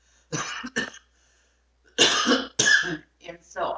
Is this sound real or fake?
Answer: real